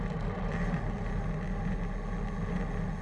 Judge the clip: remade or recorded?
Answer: recorded